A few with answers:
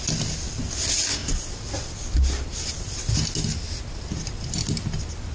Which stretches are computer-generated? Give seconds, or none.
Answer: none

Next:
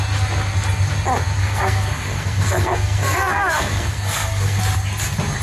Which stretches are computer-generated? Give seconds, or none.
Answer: 1.4-4.6

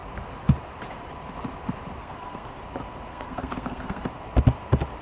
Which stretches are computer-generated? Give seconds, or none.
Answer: 2.0-2.6; 3.1-4.1

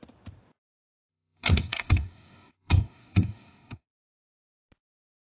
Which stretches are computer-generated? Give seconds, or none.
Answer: 1.1-4.2

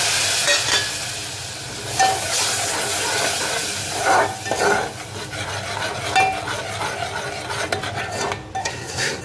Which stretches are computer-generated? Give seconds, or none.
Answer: 8.6-9.2

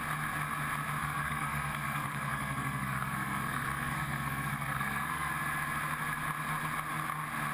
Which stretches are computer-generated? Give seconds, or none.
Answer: 1.0-5.3

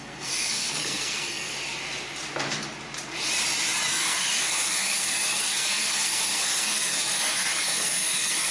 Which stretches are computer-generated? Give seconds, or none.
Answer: 0.0-1.5; 3.9-8.5